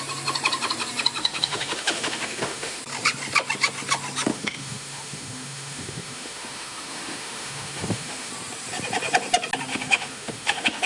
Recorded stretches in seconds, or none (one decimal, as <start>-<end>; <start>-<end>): 0.0-1.2; 2.8-4.3; 8.3-9.7